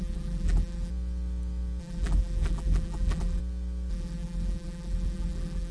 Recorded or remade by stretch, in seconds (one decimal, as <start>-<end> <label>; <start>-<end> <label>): 0.0-0.9 remade; 0.9-1.8 recorded; 1.8-3.4 remade; 3.4-3.9 recorded; 3.9-5.7 remade